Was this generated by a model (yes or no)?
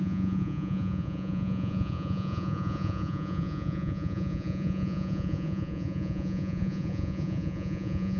yes